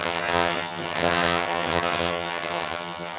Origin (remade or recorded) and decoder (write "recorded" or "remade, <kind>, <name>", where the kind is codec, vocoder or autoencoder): remade, vocoder, HiFi-GAN